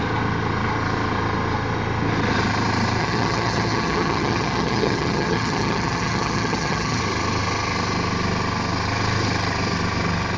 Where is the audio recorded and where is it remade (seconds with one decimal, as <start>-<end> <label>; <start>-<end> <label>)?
0.0-3.0 recorded; 3.0-7.0 remade; 7.0-10.4 recorded